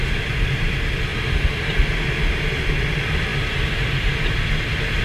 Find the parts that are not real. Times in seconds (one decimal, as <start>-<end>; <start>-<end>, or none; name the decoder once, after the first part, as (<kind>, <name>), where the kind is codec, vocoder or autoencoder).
0.0-1.1 (vocoder, BigVGAN v2); 2.6-3.3